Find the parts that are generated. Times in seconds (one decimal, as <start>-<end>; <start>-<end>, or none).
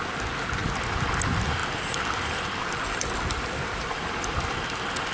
0.6-1.2; 1.6-4.6